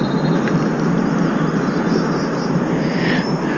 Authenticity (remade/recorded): recorded